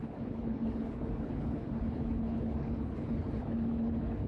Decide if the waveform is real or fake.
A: fake